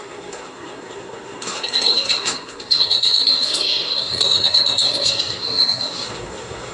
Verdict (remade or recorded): remade